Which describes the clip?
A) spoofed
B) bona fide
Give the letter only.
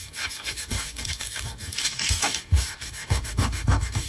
A